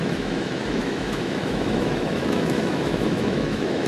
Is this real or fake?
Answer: fake